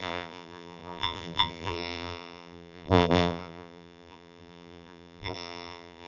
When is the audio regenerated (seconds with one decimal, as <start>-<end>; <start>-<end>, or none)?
0.0-6.1